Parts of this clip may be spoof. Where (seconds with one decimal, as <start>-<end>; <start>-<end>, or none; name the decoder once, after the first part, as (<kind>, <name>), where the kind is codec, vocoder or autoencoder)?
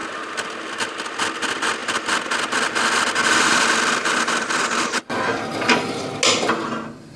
none